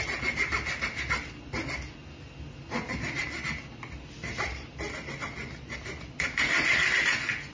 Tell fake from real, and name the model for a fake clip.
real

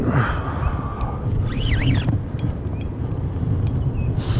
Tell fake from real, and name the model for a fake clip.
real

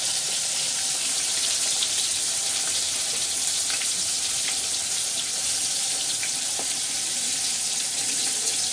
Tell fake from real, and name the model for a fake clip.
fake, vocoder, BigVGAN v2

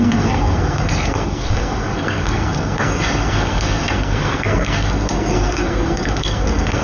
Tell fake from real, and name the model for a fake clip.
fake, codec, SNAC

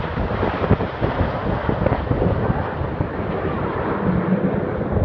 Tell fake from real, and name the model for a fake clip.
real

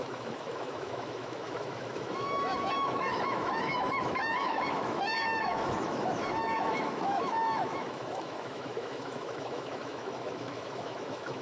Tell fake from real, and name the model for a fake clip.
fake, autoencoder, DAC-VAE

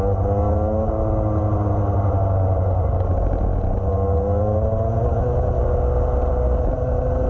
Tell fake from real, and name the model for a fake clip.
real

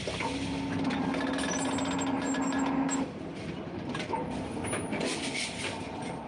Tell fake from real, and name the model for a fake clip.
real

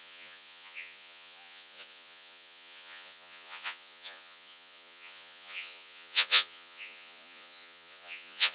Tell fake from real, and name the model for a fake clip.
fake, vocoder, Vocos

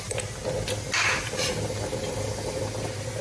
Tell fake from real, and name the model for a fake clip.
real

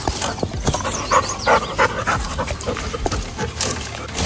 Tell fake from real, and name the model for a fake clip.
real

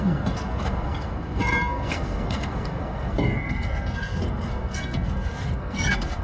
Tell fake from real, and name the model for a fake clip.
fake, codec, SNAC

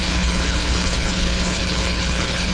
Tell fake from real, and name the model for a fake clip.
fake, codec, HILCodec